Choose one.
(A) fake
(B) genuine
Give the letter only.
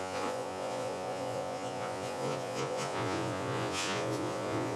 A